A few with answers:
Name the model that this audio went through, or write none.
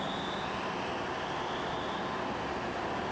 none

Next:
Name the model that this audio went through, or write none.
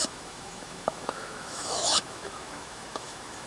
autoencoder, DAC-VAE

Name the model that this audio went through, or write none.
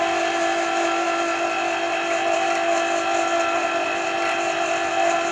none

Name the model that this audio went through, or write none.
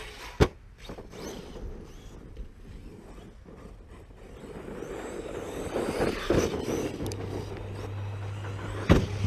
none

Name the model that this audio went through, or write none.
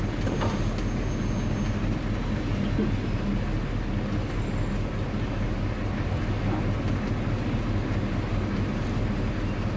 none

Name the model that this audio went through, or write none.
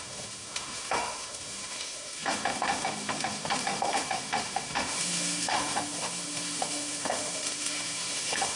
autoencoder, DAC-VAE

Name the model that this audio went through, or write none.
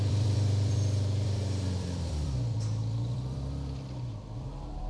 vocoder, BigVGAN v2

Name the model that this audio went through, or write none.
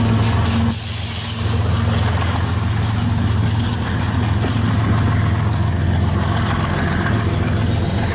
none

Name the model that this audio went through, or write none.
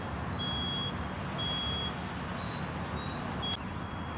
none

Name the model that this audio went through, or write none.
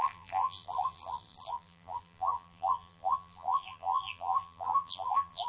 vocoder, BigVGAN v2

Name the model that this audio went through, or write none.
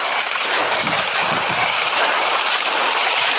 none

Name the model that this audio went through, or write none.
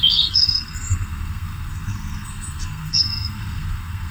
codec, SNAC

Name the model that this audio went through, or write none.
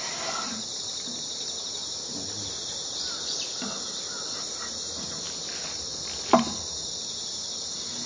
none